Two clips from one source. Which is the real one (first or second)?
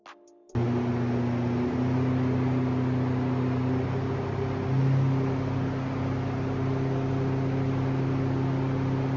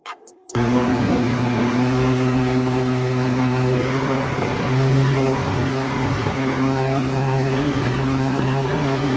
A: first